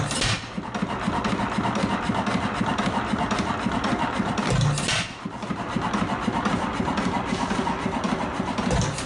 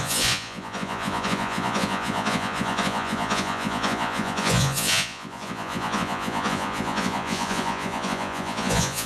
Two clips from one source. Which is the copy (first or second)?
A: second